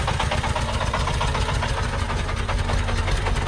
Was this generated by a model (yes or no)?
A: no